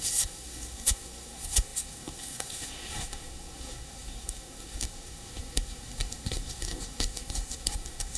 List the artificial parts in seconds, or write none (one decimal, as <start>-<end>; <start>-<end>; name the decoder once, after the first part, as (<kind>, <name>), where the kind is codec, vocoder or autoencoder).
0.0-8.2 (codec, SNAC)